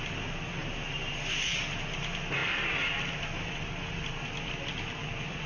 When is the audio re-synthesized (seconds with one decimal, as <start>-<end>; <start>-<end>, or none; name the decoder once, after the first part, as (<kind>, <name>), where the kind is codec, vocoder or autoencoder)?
none